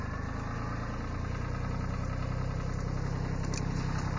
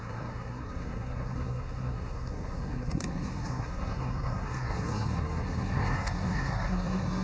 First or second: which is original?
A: first